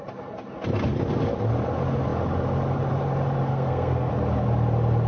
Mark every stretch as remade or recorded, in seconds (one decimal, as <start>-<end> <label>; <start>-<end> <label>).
0.0-3.5 recorded; 3.5-4.1 remade; 4.1-5.1 recorded